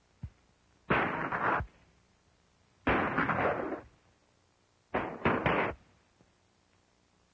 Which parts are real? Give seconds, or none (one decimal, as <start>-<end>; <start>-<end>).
0.0-1.2; 2.9-7.3